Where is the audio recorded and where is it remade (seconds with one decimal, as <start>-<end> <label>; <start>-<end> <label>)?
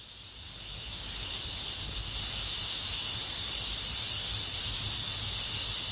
0.0-2.6 recorded; 2.6-3.2 remade; 3.2-5.9 recorded